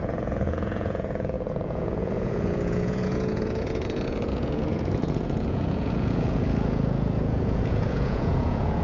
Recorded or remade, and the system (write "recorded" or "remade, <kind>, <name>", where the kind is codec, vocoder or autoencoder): remade, vocoder, Vocos